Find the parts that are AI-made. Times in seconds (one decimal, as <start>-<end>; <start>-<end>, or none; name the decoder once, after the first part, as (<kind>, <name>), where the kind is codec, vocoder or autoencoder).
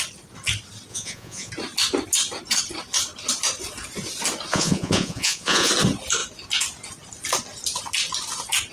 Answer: 0.9-1.5 (vocoder, Vocos); 4.5-5.7